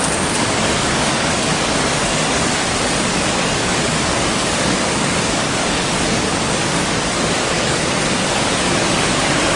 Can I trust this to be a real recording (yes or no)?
no